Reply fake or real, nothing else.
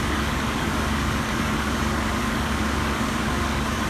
fake